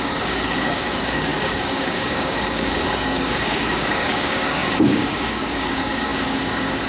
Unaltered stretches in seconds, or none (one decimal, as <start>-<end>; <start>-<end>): none